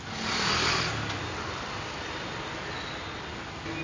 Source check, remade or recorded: recorded